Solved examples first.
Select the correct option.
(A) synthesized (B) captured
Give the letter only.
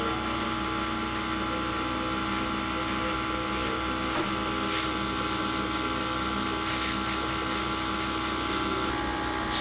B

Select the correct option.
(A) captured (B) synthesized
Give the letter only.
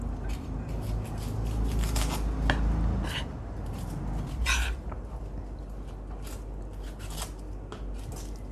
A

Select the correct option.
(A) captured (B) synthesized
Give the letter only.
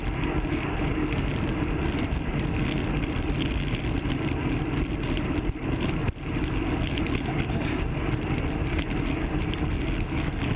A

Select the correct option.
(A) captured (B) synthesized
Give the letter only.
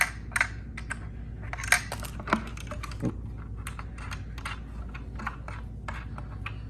A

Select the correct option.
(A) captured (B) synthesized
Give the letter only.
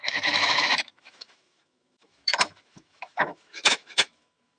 B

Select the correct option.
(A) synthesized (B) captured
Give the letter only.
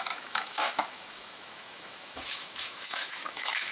A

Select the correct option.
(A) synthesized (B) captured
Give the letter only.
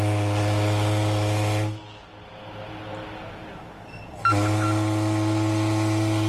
B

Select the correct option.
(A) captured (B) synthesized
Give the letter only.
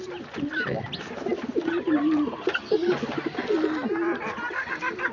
A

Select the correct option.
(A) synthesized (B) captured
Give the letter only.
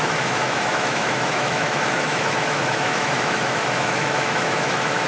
A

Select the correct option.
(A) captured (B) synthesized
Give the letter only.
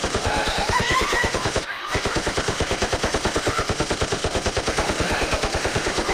B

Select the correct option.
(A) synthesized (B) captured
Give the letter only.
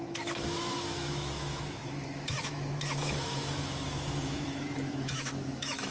A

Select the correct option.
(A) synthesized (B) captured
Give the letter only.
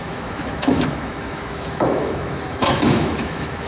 A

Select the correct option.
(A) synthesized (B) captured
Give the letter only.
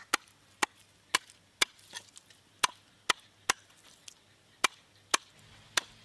B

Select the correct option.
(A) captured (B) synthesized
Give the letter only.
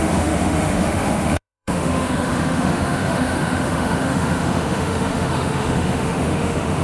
B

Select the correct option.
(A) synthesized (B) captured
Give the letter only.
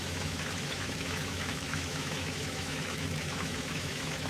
A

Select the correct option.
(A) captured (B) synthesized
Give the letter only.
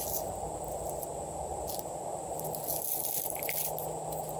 A